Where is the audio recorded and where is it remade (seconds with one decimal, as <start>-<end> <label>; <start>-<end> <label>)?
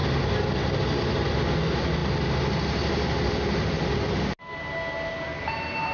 0.0-5.9 recorded